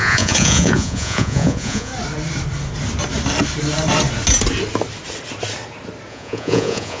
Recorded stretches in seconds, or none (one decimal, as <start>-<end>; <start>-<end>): 1.9-6.1